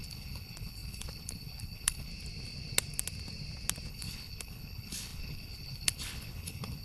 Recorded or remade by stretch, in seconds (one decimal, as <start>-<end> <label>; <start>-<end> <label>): 0.0-2.1 remade; 2.1-3.9 recorded; 3.9-6.8 remade